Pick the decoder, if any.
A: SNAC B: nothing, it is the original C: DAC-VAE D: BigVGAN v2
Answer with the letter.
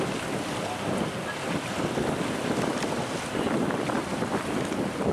B